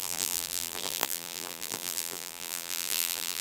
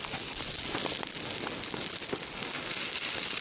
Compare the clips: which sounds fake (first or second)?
first